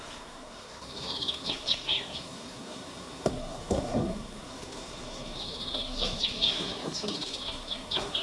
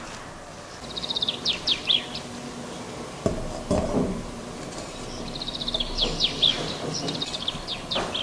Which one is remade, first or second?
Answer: first